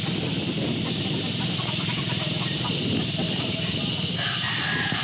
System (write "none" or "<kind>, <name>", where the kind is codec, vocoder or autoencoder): none